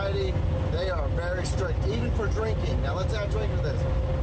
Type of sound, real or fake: real